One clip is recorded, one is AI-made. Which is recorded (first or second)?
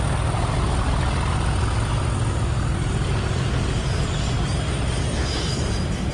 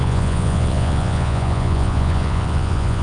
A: first